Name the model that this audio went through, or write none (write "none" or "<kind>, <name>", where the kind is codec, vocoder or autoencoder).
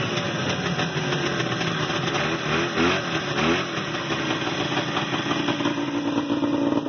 none